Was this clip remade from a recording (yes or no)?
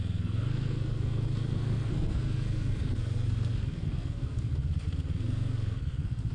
yes